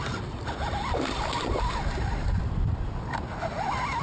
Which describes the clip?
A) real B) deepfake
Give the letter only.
A